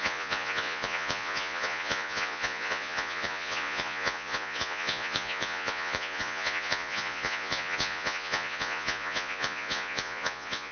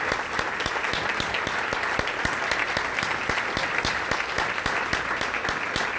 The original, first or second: second